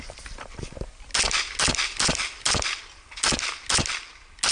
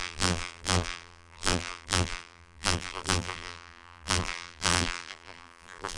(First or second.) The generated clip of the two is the second